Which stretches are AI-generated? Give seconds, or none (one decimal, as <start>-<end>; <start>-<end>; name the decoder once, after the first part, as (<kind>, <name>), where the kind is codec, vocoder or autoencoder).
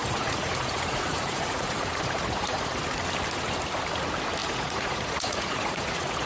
0.0-2.8 (vocoder, Vocos); 4.4-6.3